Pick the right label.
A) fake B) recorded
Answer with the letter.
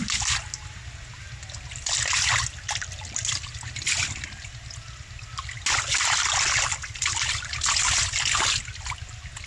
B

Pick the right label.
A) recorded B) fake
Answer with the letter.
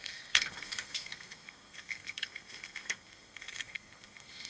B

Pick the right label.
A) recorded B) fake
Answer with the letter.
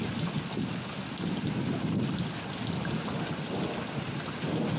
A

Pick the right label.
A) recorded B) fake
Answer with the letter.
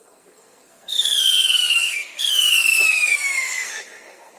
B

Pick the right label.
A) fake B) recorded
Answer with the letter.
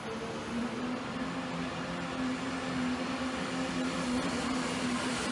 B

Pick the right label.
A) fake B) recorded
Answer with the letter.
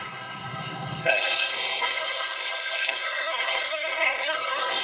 A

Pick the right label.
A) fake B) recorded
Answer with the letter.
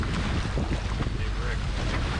B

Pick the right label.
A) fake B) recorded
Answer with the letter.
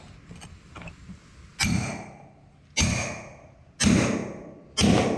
B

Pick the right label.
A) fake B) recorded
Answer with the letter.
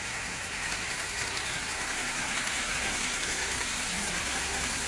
A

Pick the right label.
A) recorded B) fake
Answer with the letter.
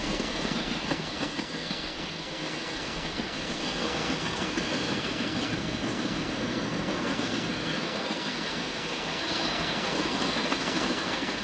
B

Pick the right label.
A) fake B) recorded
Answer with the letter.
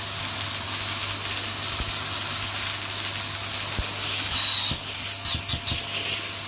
B